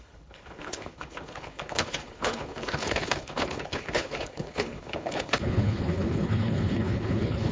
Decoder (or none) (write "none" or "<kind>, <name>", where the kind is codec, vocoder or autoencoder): codec, HILCodec